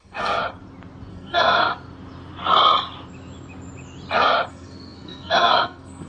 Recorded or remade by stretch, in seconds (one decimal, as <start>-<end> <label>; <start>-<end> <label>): 0.0-0.4 remade; 0.4-1.1 recorded; 1.1-1.7 remade; 1.7-4.5 recorded; 4.5-6.1 remade